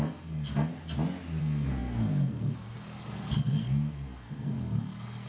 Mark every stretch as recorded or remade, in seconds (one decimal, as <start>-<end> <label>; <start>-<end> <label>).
0.0-0.7 remade; 0.7-1.4 recorded; 1.4-5.3 remade